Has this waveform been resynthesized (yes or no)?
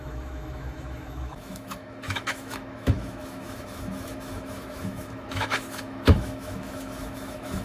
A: yes